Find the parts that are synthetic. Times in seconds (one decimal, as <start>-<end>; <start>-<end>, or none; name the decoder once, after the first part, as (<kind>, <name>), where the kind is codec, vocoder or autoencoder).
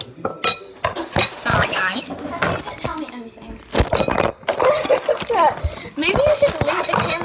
1.5-2.0 (codec, DAC)